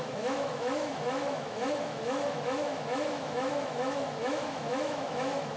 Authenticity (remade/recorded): remade